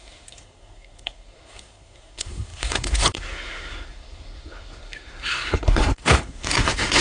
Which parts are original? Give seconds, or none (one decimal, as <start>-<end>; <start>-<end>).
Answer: none